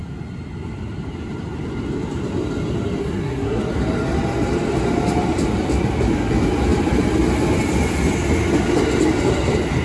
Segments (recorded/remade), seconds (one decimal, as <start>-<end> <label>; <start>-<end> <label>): 0.0-3.0 recorded; 3.0-3.6 remade; 3.6-9.8 recorded